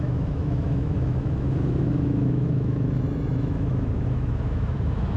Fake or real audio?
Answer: fake